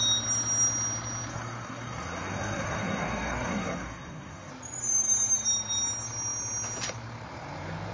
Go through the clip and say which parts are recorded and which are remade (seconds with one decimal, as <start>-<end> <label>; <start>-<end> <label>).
0.0-1.3 recorded; 1.3-4.5 remade; 4.5-7.9 recorded